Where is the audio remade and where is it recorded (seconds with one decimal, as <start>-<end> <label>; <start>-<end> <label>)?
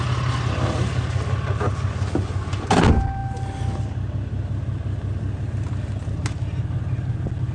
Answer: 0.0-7.5 recorded